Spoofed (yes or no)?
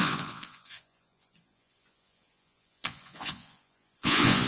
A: yes